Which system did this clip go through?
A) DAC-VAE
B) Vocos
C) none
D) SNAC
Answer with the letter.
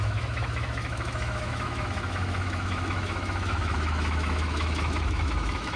A